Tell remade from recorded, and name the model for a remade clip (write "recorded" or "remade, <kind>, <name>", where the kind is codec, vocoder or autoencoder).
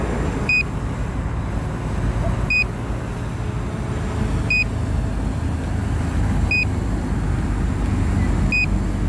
recorded